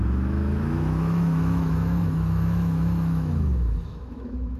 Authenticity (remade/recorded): remade